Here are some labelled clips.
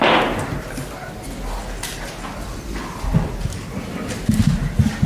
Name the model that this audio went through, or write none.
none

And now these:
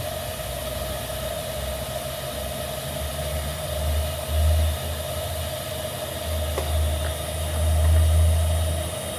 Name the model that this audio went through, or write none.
none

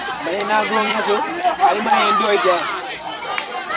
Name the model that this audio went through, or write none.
vocoder, BigVGAN v2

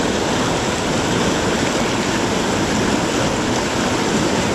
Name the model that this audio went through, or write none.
none